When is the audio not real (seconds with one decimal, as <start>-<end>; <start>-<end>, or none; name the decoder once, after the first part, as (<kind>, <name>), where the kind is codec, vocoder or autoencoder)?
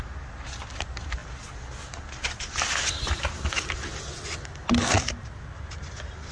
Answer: none